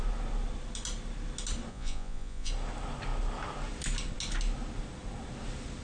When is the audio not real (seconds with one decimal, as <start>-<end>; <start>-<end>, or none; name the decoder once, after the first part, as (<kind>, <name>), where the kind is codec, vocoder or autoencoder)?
1.7-2.5 (vocoder, Vocos)